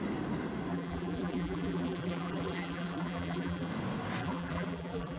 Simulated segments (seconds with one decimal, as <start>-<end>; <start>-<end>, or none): 0.7-3.7; 4.2-5.2